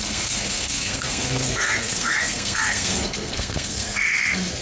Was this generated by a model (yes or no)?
yes